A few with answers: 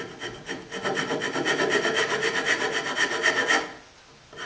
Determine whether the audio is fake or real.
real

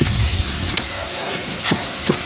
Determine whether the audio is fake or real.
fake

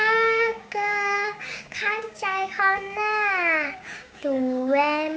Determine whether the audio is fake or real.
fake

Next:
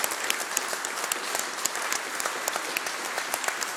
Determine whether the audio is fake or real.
real